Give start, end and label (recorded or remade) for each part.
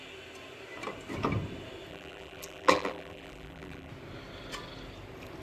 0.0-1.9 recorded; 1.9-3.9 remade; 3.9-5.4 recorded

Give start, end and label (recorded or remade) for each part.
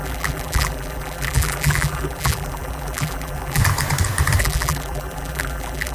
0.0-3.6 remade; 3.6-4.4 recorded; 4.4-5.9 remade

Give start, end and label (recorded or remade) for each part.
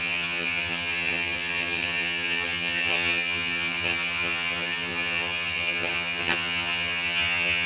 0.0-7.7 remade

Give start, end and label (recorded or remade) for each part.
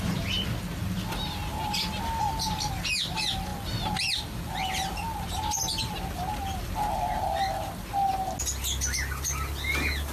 0.0-10.1 recorded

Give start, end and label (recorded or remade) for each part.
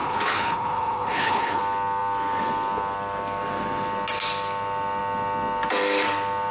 0.0-1.6 remade; 1.6-6.5 recorded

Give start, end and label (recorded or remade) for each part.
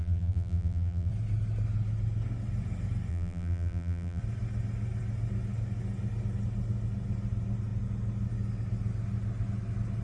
0.0-1.1 remade; 1.1-3.1 recorded; 3.1-4.2 remade; 4.2-10.0 recorded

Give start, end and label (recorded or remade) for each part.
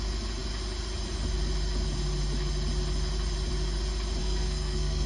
0.0-4.2 recorded; 4.2-5.1 remade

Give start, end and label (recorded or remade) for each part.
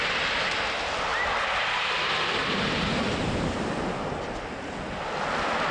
0.0-5.7 recorded